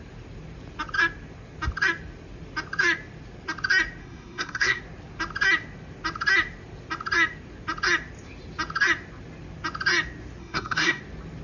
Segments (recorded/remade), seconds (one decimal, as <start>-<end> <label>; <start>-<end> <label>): 0.0-4.0 recorded; 4.0-4.8 remade; 4.8-10.4 recorded; 10.4-11.0 remade; 11.0-11.4 recorded